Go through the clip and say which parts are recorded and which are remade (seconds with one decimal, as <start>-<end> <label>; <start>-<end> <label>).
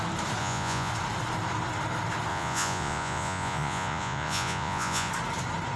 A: 0.0-0.4 recorded; 0.4-0.9 remade; 0.9-2.3 recorded; 2.3-5.1 remade; 5.1-5.8 recorded